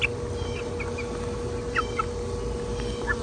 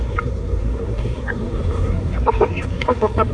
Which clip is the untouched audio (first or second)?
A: first